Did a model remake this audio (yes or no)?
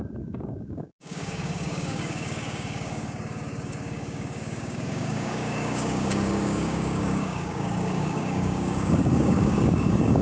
yes